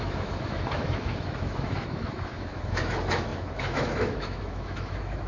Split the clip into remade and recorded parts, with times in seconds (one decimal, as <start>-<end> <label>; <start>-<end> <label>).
0.0-5.3 remade